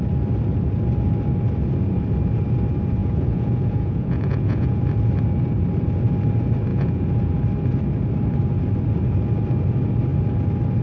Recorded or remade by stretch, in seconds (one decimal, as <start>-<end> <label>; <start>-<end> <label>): 0.0-3.0 recorded; 3.0-4.8 remade; 4.8-6.7 recorded; 6.7-7.4 remade; 7.4-10.8 recorded